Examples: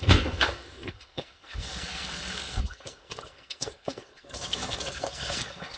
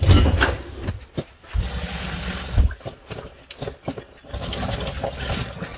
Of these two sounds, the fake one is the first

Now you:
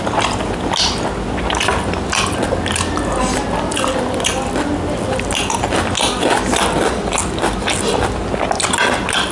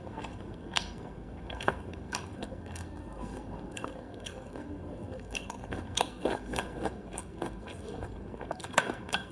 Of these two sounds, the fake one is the second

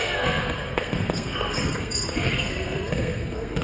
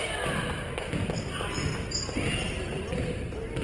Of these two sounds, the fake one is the first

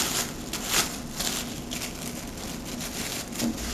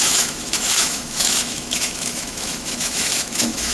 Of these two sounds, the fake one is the second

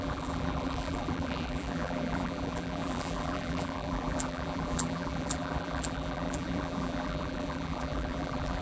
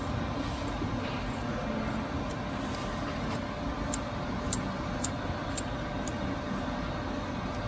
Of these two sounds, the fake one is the first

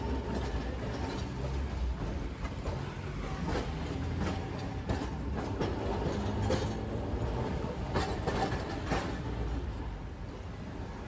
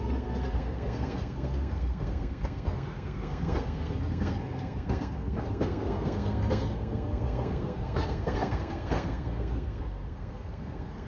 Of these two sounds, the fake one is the second